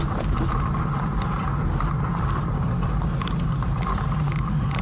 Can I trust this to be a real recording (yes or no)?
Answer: yes